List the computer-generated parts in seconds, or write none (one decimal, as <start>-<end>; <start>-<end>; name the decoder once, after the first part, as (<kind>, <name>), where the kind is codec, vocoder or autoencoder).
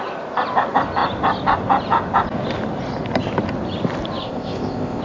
4.2-5.0 (codec, ZipCodec)